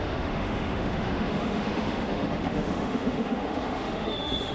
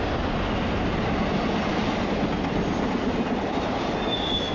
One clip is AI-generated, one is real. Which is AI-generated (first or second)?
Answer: first